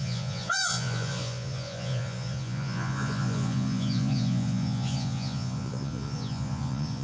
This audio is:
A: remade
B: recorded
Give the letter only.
A